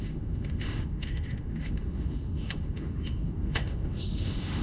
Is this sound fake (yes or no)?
yes